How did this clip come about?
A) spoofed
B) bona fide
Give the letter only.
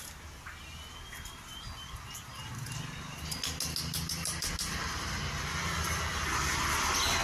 B